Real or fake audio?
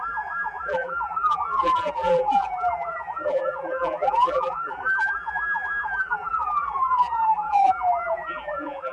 fake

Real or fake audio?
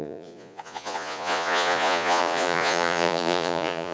fake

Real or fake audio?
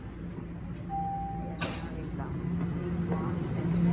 real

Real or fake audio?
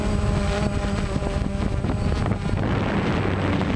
real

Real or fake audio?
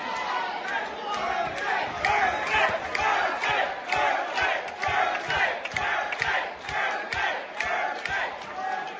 real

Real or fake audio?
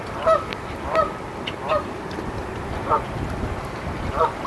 real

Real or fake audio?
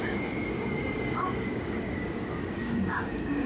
fake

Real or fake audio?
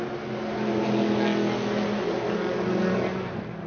real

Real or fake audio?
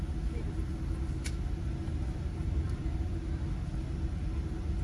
real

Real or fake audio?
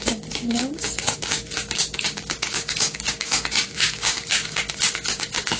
fake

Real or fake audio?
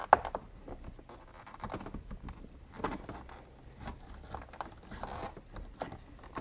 real